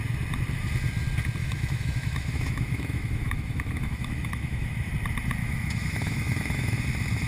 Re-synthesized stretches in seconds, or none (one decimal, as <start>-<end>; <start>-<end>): 1.4-4.9; 5.4-6.8